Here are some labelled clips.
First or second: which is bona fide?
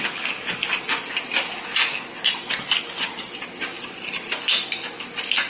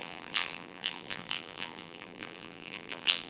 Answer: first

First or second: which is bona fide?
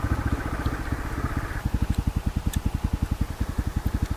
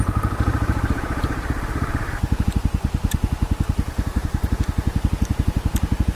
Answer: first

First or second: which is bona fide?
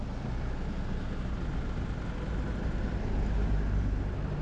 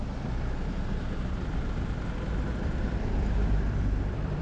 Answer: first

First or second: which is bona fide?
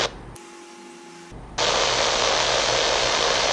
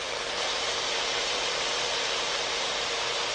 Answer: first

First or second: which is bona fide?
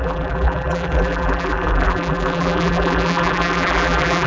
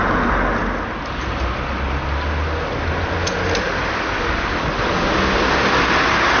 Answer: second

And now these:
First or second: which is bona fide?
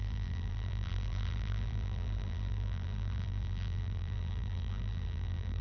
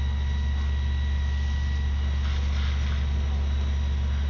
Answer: second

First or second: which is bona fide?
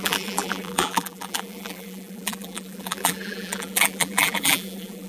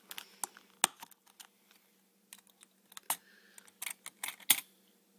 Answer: second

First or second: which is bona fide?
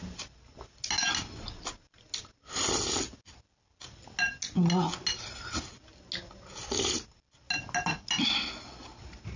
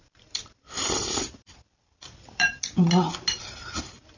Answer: first